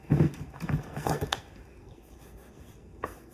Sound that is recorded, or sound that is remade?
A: remade